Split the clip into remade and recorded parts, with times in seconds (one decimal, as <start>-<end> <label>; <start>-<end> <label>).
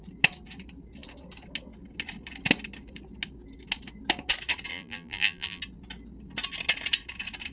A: 0.0-4.7 recorded; 4.7-5.6 remade; 5.6-7.5 recorded